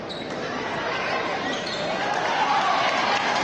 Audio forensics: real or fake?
fake